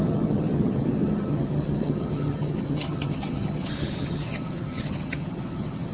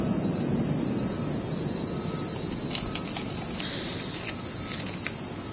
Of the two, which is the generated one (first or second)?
first